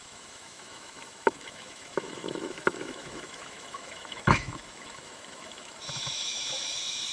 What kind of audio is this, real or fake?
fake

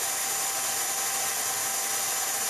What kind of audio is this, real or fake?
real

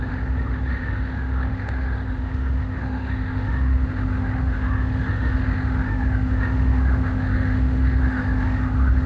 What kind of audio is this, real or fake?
fake